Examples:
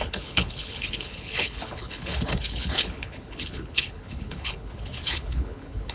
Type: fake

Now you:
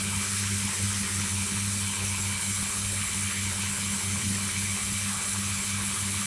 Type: fake